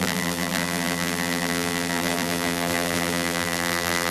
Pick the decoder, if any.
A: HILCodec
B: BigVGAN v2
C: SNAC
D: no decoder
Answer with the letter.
B